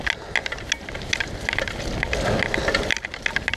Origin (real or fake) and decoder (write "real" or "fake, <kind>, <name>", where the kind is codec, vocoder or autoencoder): real